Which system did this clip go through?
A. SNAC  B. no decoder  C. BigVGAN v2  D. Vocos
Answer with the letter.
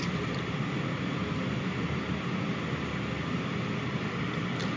B